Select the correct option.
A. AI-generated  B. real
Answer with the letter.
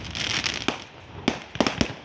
B